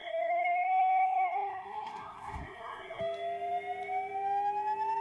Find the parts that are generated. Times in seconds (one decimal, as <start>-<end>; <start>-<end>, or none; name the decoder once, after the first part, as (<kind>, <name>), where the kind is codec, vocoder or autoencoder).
0.0-3.0 (codec, SNAC)